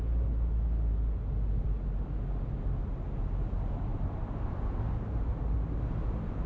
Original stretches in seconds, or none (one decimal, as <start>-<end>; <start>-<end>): 0.0-3.9; 5.4-6.5